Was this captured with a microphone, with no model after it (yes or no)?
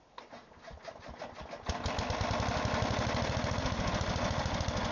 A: yes